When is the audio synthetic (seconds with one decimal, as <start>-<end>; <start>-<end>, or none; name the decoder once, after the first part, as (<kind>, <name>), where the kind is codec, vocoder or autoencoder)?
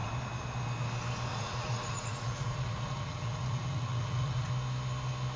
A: 1.3-4.5 (vocoder, Vocos)